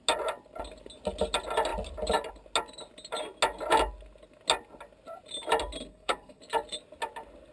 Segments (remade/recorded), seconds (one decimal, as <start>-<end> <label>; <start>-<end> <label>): 0.0-5.9 recorded; 5.9-6.4 remade; 6.4-7.5 recorded